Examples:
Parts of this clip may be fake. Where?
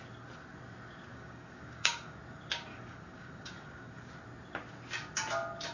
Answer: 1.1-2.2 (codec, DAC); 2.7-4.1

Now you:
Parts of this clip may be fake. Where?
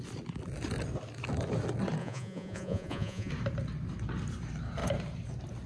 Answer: 2.0-3.3 (vocoder, Vocos)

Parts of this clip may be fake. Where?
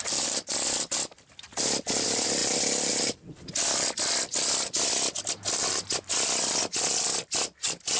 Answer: none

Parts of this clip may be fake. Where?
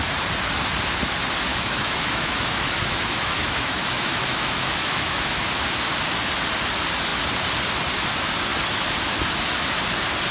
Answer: 1.5-5.5 (autoencoder, DAC-VAE)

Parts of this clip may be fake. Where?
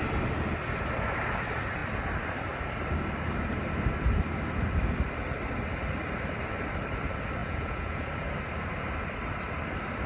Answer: 7.4-8.1 (vocoder, Vocos)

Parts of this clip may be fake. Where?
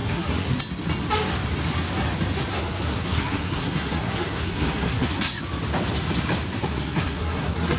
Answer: 0.0-0.6 (codec, SNAC); 2.5-5.4; 6.5-7.8